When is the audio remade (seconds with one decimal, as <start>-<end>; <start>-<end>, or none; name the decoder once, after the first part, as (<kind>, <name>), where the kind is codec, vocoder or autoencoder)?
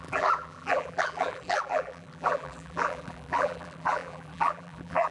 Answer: 0.0-5.1 (vocoder, BigVGAN v2)